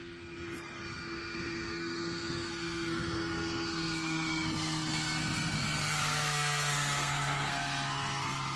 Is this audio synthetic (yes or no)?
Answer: yes